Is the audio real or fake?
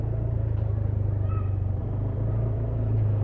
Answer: fake